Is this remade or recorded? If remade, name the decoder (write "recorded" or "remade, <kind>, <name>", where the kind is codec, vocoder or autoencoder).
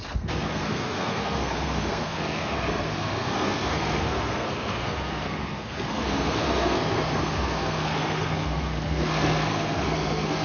remade, codec, SNAC